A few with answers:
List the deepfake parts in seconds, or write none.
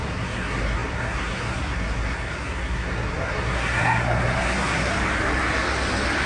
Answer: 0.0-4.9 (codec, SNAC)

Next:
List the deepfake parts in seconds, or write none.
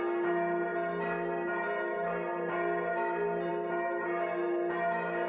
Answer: none